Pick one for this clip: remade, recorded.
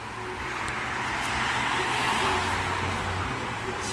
recorded